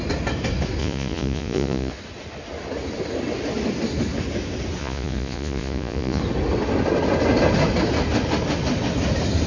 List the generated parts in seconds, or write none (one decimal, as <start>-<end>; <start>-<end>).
0.8-1.9; 4.8-6.2